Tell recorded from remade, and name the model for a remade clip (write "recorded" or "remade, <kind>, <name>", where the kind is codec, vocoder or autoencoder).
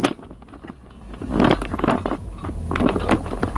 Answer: recorded